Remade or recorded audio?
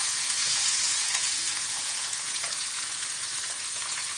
remade